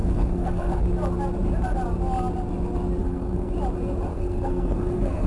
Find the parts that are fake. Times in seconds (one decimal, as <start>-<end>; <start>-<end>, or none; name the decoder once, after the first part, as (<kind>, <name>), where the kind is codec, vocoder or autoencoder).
0.0-0.8 (codec, SNAC); 3.0-3.5; 4.1-5.3